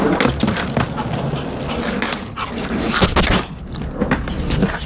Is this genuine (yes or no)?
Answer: yes